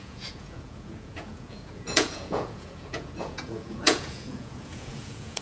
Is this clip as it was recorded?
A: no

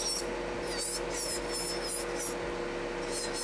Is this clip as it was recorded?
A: yes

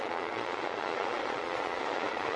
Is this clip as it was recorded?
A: no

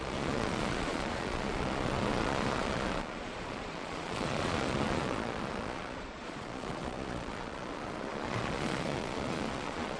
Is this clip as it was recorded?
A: no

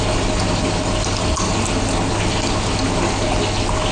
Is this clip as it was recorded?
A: yes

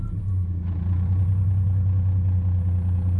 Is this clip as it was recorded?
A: yes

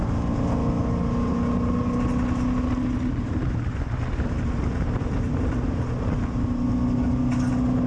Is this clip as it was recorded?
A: yes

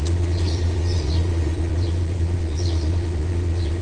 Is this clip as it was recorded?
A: no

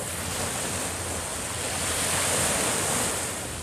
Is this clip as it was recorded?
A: yes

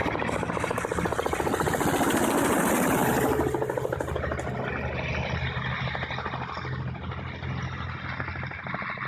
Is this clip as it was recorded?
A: yes